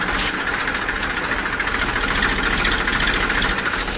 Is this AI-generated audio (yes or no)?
no